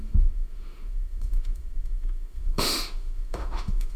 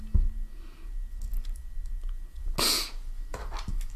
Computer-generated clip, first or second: first